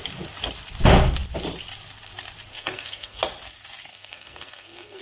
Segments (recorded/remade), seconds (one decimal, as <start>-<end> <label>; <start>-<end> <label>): 0.0-2.5 recorded; 2.5-3.2 remade; 3.2-3.9 recorded; 3.9-5.0 remade